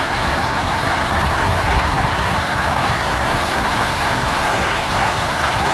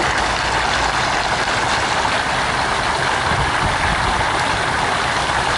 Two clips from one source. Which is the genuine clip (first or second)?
second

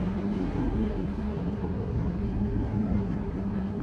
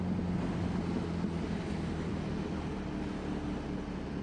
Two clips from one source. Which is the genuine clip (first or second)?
second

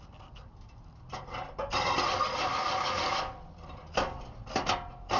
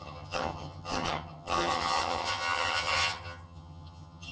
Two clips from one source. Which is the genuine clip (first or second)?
first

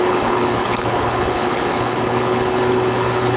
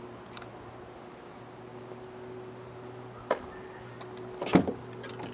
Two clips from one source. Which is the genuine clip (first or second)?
second